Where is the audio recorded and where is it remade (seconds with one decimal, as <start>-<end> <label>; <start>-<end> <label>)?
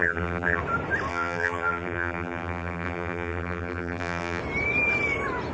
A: 0.0-0.6 remade; 0.6-1.1 recorded; 1.1-4.4 remade; 4.4-5.5 recorded